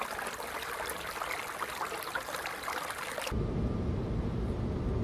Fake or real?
real